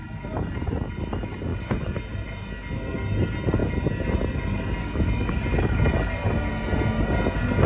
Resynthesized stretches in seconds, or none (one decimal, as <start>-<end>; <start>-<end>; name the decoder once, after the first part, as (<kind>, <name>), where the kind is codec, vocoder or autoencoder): none